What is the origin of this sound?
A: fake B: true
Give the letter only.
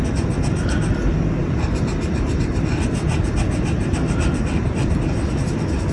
B